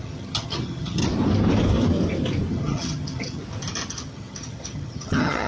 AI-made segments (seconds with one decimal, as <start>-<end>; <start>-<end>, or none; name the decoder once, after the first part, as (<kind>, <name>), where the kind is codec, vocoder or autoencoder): 0.0-1.0 (vocoder, HiFi-GAN); 2.5-3.4; 3.9-5.5